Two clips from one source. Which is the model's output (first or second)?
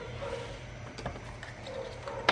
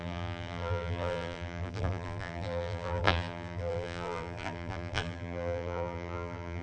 second